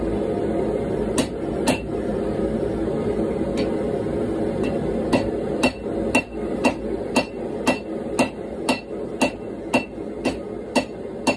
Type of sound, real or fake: real